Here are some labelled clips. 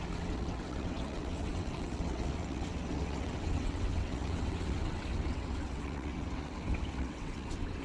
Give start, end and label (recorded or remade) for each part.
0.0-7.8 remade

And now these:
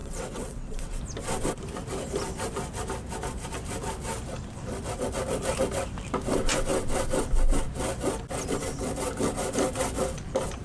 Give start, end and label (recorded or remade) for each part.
0.0-1.0 remade; 1.0-10.6 recorded